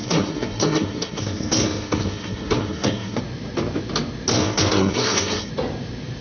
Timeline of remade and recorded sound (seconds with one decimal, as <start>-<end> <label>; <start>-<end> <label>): 0.0-3.2 remade; 3.2-4.3 recorded; 4.3-5.5 remade; 5.5-6.2 recorded

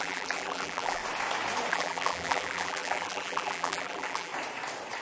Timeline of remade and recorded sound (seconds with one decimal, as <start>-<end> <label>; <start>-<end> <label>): 0.0-1.0 remade; 1.0-1.7 recorded; 1.7-4.3 remade; 4.3-5.0 recorded